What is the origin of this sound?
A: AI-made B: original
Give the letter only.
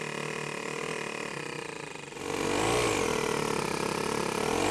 B